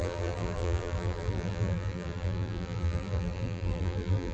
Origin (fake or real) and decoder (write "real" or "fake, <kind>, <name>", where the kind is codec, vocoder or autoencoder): fake, vocoder, BigVGAN v2